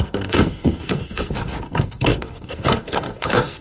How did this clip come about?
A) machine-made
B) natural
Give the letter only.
A